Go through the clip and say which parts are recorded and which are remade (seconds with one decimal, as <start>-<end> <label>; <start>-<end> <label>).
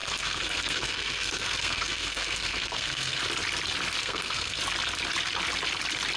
0.0-3.2 remade; 3.2-4.0 recorded; 4.0-4.6 remade; 4.6-6.2 recorded